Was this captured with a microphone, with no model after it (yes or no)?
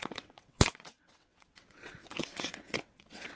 no